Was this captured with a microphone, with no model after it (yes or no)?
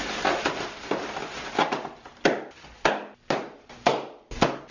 yes